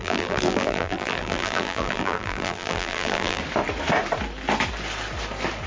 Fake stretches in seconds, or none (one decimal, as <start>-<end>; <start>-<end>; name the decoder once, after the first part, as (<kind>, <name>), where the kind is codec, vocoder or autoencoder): 0.0-3.4 (vocoder, BigVGAN v2)